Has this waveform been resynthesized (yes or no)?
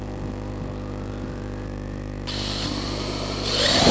yes